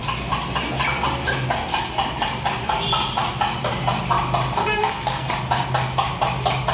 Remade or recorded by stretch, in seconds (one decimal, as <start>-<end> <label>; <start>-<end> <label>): 0.0-4.6 recorded; 4.6-5.3 remade; 5.3-6.7 recorded